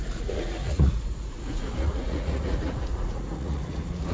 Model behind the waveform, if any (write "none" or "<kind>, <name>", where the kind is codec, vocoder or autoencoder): vocoder, Vocos